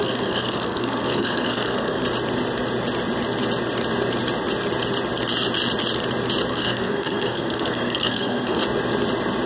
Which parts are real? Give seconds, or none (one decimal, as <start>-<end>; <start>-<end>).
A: 2.0-6.5; 8.6-9.5